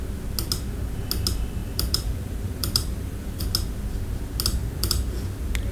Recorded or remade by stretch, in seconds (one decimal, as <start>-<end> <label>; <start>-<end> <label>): 0.0-1.6 recorded; 1.6-3.4 remade; 3.4-4.6 recorded; 4.6-5.1 remade; 5.1-5.7 recorded